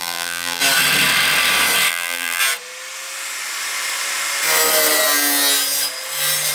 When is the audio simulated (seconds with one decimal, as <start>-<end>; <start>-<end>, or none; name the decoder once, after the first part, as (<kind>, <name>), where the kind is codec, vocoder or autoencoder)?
0.0-0.6 (vocoder, BigVGAN v2); 1.9-2.4